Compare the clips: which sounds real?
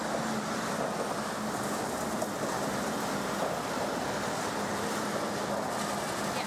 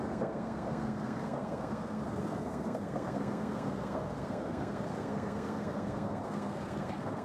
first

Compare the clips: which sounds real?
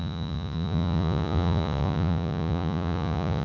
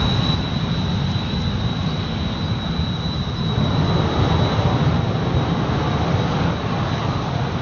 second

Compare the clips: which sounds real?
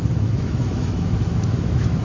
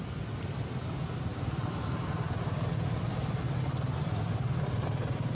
second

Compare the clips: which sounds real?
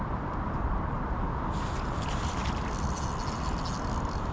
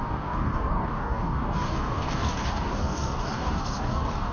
first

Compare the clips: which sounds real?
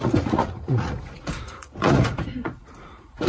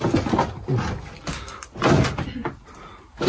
second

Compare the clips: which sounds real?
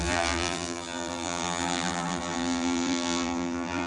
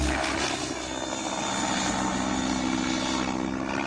second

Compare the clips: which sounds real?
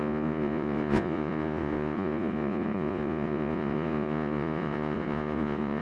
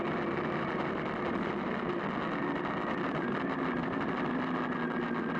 second